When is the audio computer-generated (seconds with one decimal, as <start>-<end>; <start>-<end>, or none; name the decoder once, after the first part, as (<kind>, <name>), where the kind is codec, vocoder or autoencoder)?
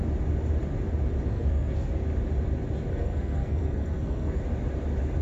1.3-1.9 (codec, SNAC); 2.9-4.4